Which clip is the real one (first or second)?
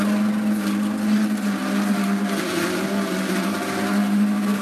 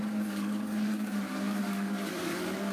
first